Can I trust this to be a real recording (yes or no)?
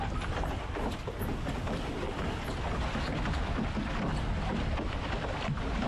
yes